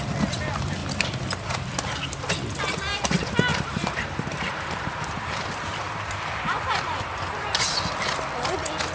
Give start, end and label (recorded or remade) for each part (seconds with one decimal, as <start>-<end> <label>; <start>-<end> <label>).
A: 0.0-3.5 recorded; 3.5-7.6 remade; 7.6-8.9 recorded